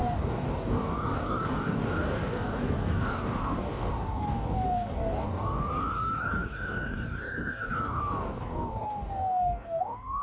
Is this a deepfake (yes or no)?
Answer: yes